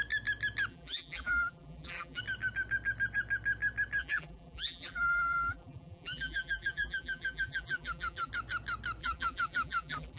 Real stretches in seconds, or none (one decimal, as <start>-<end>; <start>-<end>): 0.0-0.7; 2.2-4.0; 8.3-9.0